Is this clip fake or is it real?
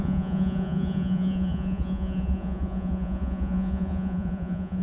fake